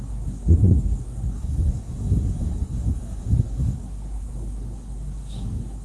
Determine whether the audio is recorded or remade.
remade